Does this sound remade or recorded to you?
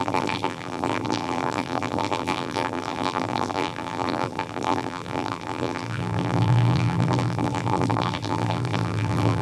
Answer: remade